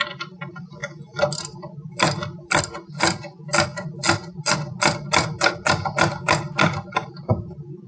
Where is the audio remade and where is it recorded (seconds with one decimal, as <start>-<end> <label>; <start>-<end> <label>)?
0.0-7.9 recorded